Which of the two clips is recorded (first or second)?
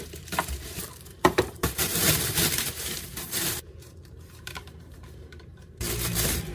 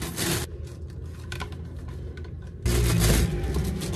second